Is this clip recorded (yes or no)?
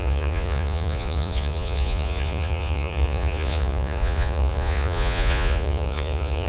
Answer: no